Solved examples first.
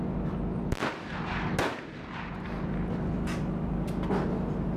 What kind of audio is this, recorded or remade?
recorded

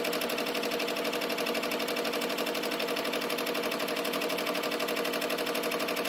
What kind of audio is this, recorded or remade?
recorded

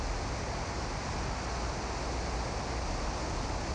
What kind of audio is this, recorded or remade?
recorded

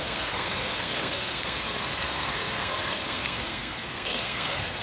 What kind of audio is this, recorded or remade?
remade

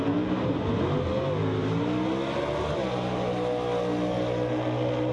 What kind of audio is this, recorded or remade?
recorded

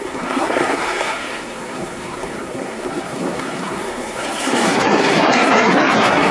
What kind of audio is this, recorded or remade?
remade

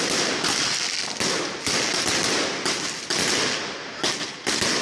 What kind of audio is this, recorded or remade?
recorded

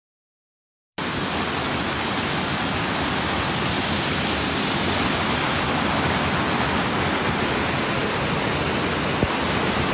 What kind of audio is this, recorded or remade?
recorded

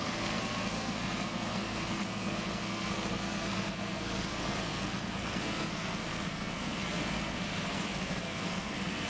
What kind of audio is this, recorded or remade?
remade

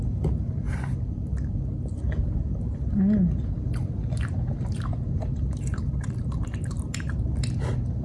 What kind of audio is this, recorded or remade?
recorded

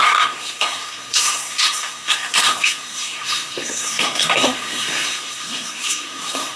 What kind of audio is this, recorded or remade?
remade